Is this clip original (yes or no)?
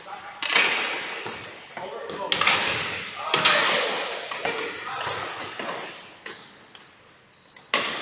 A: yes